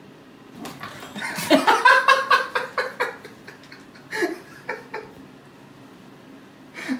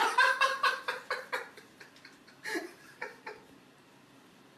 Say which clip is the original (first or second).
first